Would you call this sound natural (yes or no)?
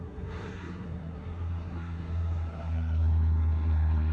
no